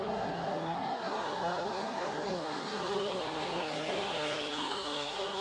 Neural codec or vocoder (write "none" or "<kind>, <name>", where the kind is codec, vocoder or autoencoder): codec, SNAC